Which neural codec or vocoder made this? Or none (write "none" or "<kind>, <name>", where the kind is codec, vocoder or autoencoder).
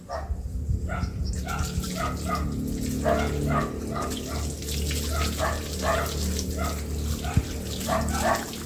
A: none